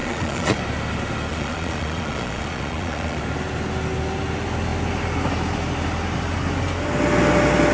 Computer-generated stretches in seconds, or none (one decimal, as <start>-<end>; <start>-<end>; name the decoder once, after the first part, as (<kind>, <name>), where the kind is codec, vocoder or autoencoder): 0.0-0.6 (vocoder, Vocos); 1.3-3.2